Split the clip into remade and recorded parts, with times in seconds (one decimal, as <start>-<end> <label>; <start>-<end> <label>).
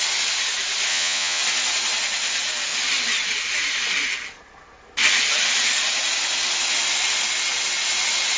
0.0-0.9 recorded; 0.9-1.4 remade; 1.4-8.4 recorded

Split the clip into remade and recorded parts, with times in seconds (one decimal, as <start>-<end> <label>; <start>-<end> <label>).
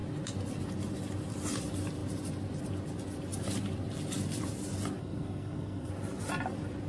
0.0-5.0 recorded; 5.0-5.9 remade; 5.9-6.9 recorded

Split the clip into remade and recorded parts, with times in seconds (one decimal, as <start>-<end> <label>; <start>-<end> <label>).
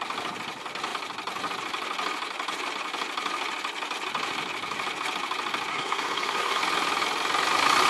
0.0-5.7 recorded; 5.7-6.6 remade; 6.6-7.9 recorded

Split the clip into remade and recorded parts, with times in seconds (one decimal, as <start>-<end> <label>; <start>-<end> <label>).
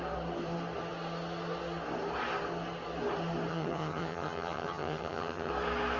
0.0-3.5 recorded; 3.5-5.5 remade; 5.5-6.0 recorded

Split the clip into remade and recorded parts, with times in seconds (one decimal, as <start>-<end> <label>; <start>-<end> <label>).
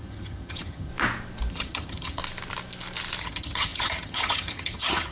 0.0-0.9 remade; 0.9-1.5 recorded; 1.5-2.2 remade; 2.2-3.2 recorded; 3.2-5.1 remade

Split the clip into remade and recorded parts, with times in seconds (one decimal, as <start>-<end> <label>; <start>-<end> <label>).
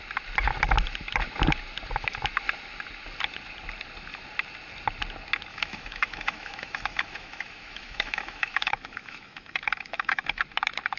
0.0-5.5 recorded; 5.5-10.4 remade; 10.4-11.0 recorded